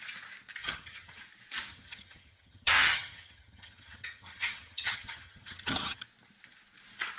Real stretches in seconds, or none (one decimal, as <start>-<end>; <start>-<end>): 0.0-0.6; 1.2-1.7; 6.0-7.2